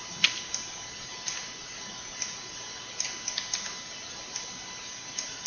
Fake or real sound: real